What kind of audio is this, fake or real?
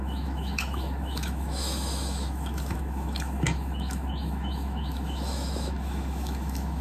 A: fake